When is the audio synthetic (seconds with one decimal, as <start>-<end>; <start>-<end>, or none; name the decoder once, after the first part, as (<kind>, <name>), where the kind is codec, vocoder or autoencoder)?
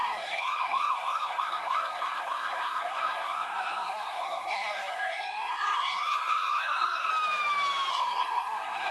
0.0-7.1 (codec, SNAC); 7.9-8.9